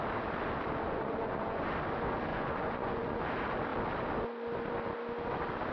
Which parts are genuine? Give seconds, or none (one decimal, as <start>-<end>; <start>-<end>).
0.0-0.8; 1.7-2.3; 3.2-5.7